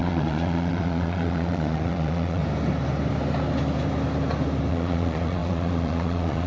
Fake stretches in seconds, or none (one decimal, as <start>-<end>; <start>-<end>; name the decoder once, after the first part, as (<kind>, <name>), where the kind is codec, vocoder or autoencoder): 0.0-2.4 (vocoder, Vocos); 4.7-6.5